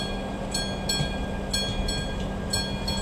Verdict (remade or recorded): recorded